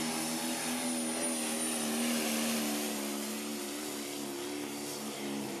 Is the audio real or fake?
real